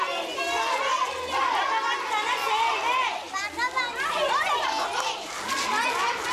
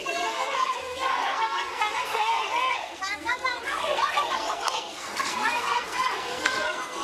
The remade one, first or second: second